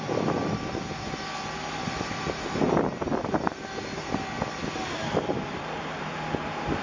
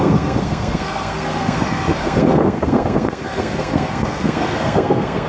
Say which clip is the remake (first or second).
second